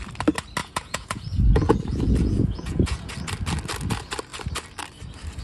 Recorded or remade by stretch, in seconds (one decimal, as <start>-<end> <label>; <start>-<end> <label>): 0.0-0.6 recorded; 0.6-3.1 remade; 3.1-5.4 recorded